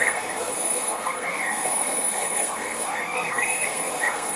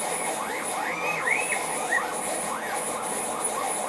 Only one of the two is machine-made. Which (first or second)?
first